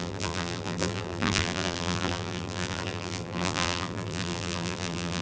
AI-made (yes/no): yes